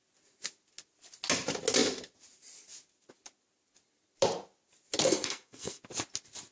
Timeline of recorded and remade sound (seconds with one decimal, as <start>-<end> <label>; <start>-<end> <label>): 0.0-5.0 recorded; 5.0-5.8 remade; 5.8-6.5 recorded